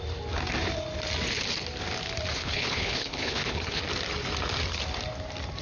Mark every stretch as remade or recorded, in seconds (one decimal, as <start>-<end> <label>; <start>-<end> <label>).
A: 0.0-2.3 recorded; 2.3-3.8 remade; 3.8-5.6 recorded